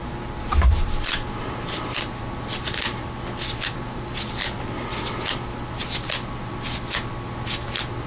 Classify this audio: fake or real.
real